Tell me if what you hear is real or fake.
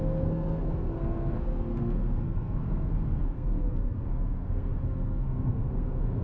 fake